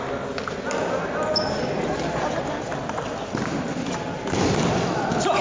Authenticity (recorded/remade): recorded